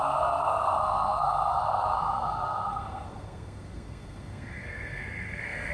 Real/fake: fake